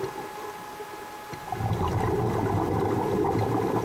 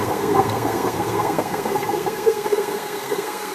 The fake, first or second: second